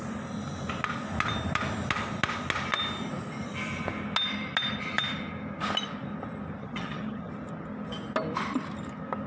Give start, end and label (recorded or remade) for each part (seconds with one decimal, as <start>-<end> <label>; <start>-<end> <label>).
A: 0.0-6.6 recorded; 6.6-7.3 remade; 7.3-9.3 recorded